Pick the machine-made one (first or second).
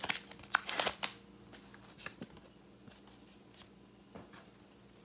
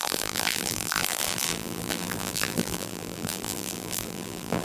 second